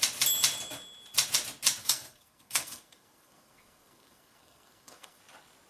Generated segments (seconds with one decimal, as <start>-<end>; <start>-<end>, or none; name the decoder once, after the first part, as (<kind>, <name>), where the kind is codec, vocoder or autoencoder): 1.8-5.2 (codec, SNAC)